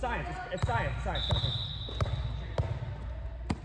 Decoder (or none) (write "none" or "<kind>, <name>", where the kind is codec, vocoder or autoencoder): none